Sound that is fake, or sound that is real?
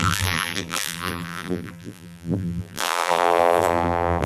fake